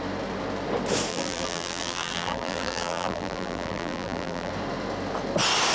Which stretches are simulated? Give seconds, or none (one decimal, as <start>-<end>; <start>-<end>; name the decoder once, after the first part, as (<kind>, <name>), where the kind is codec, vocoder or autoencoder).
1.1-4.5 (vocoder, BigVGAN v2)